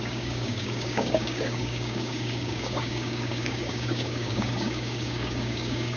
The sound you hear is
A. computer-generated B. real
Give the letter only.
A